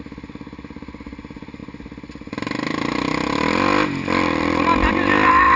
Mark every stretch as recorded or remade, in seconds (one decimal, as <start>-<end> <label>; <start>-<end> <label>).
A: 0.0-5.6 recorded